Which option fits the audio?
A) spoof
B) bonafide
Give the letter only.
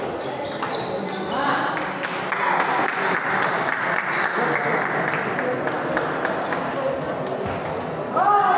B